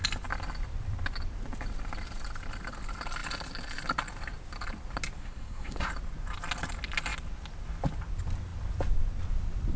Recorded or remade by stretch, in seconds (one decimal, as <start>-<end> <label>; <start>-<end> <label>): 0.0-5.2 recorded; 5.2-5.9 remade; 5.9-9.8 recorded